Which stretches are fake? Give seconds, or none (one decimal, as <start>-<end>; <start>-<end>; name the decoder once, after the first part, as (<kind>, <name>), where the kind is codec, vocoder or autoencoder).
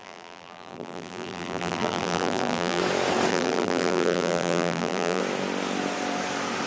0.0-2.8 (vocoder, BigVGAN v2); 3.3-5.2